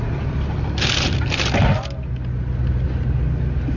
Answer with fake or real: real